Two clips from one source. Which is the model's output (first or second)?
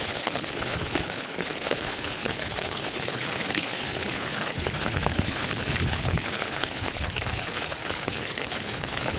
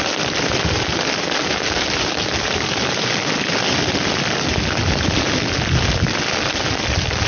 first